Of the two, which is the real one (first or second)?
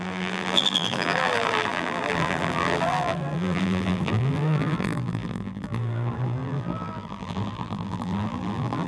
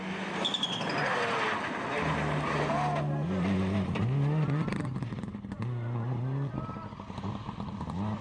second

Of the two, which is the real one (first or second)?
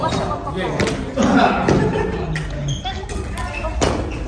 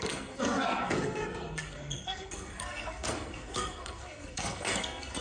first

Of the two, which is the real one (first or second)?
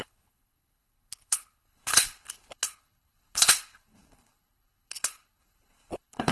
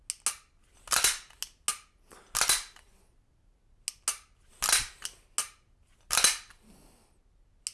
second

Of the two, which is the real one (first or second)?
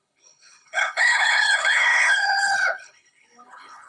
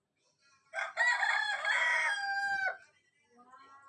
second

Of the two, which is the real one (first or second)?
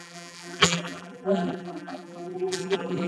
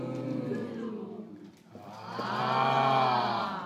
second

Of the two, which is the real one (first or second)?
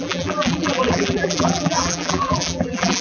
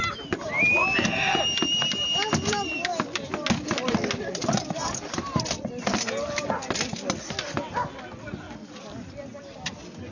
second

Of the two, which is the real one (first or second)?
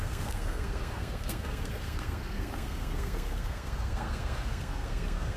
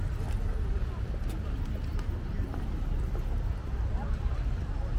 second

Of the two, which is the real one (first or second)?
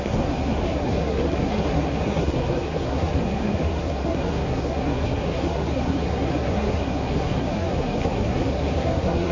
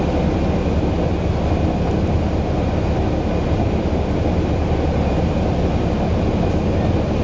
second